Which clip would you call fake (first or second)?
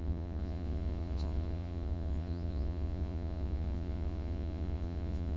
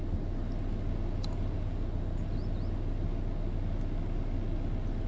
first